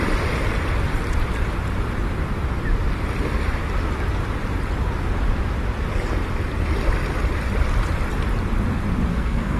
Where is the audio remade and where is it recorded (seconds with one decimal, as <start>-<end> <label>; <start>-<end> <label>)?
0.0-9.1 recorded; 9.1-9.6 remade